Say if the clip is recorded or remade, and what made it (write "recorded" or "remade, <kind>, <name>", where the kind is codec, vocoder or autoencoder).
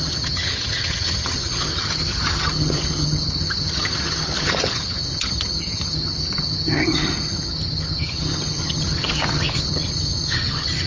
remade, vocoder, HiFi-GAN